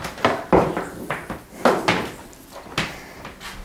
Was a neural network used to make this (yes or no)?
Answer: no